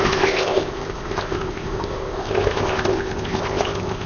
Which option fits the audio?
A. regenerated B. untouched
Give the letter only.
A